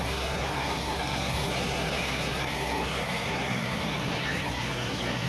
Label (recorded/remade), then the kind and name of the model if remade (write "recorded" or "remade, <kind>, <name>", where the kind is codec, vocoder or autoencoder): remade, codec, SNAC